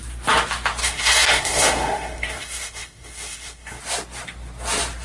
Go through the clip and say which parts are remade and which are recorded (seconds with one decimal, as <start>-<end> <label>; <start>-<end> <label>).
0.0-0.8 recorded; 0.8-3.8 remade; 3.8-5.0 recorded